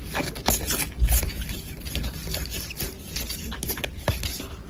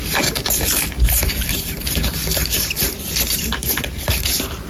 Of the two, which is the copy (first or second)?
second